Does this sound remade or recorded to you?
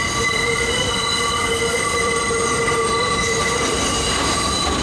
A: remade